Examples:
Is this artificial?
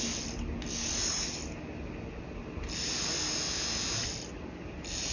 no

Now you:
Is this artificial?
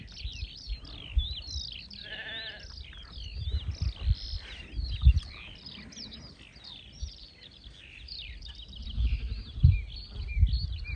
no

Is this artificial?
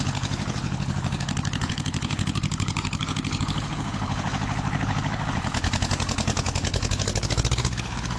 yes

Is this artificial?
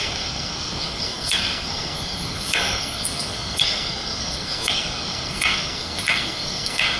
yes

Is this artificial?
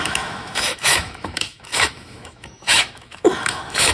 yes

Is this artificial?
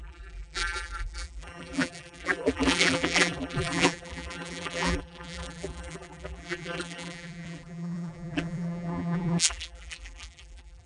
yes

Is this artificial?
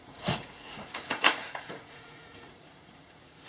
yes